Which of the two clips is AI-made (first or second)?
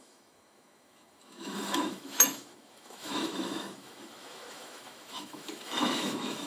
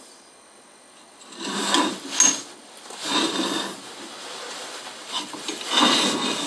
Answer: first